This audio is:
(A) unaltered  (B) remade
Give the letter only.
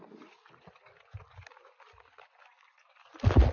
A